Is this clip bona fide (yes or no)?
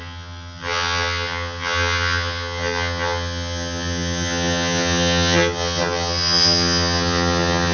no